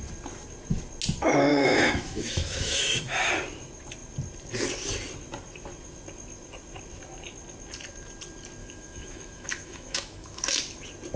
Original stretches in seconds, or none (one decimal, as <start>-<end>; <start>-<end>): 0.0-1.5; 3.3-8.6; 10.6-11.2